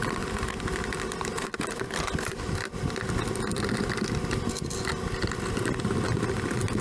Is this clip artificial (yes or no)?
no